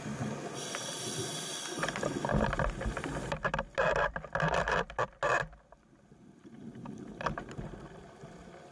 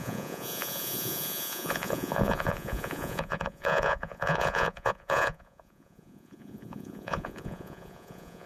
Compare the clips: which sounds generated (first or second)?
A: second